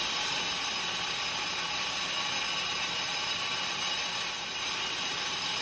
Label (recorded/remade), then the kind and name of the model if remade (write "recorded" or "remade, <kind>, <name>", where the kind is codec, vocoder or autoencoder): recorded